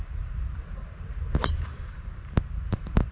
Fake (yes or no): yes